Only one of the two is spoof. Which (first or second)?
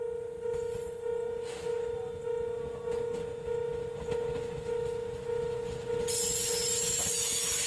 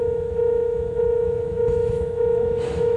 second